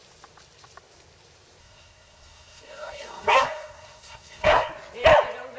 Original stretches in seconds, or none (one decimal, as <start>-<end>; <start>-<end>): 0.0-1.6; 4.7-5.6